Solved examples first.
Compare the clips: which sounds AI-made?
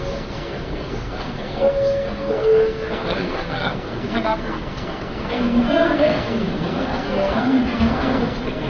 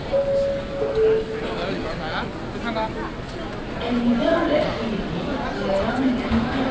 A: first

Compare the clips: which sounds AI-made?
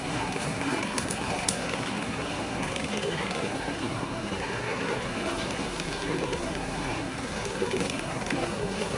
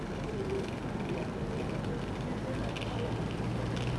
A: first